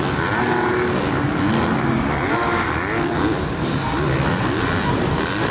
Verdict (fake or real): real